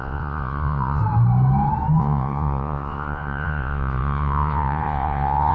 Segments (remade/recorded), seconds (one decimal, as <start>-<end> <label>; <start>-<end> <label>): 0.0-1.0 remade; 1.0-2.0 recorded; 2.0-5.5 remade